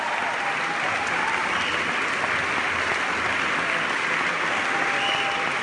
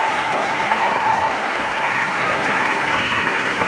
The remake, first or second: second